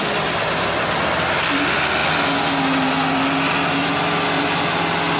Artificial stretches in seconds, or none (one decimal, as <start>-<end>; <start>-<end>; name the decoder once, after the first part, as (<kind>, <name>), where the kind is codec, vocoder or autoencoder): none